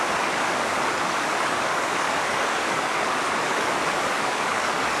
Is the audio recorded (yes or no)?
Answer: no